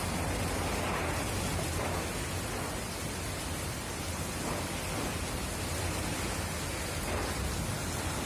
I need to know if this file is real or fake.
real